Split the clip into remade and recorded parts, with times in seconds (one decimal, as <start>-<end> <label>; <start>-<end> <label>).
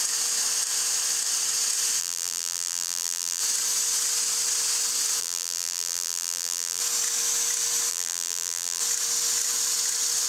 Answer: 0.0-2.0 recorded; 2.0-3.4 remade; 3.4-5.2 recorded; 5.2-6.8 remade; 6.8-7.9 recorded; 7.9-8.8 remade; 8.8-10.3 recorded